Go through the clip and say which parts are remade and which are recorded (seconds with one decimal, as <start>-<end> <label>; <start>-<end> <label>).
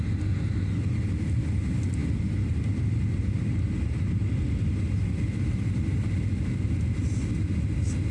0.0-8.1 recorded